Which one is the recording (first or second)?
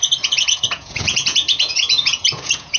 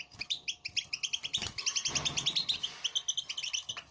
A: second